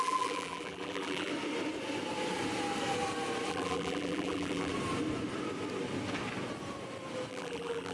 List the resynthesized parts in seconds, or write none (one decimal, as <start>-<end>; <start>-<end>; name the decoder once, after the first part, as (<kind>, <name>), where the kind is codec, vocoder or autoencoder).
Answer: 0.0-1.3 (vocoder, BigVGAN v2); 3.5-4.7; 7.3-7.9